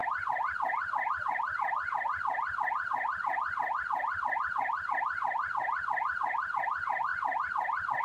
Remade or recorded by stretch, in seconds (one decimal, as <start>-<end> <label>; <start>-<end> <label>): 0.0-8.0 recorded